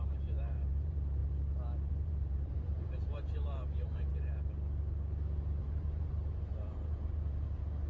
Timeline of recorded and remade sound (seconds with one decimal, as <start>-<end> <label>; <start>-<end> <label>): 0.0-1.2 remade; 1.2-1.9 recorded; 1.9-4.1 remade; 4.1-5.6 recorded; 5.6-7.9 remade

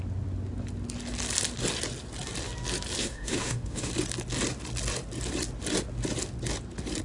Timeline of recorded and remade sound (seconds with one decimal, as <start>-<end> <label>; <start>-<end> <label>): 0.0-3.0 recorded; 3.0-3.9 remade; 3.9-7.0 recorded